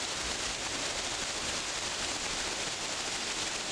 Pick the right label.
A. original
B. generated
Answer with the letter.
A